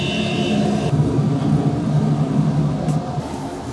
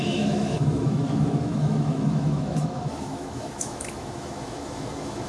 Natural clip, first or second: first